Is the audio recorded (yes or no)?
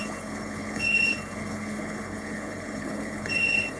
no